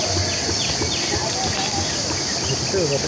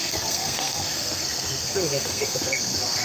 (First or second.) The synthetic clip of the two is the second